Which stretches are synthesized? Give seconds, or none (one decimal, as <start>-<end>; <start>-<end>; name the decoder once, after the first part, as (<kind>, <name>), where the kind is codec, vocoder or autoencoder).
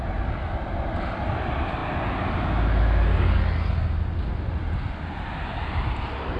none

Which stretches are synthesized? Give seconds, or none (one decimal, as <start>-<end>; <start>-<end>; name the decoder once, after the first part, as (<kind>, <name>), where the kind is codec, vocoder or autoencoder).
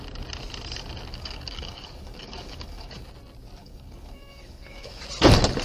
1.1-3.1 (codec, DAC); 3.6-5.0